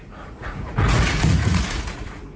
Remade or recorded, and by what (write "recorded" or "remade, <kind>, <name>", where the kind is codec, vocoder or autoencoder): remade, vocoder, Vocos